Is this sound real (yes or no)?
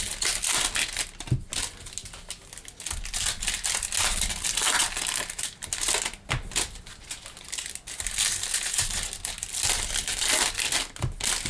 yes